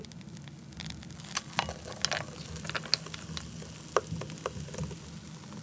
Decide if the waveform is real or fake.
real